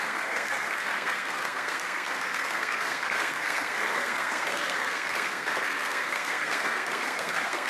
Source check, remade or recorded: remade